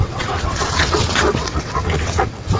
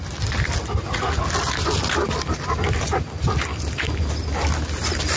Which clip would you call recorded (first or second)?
second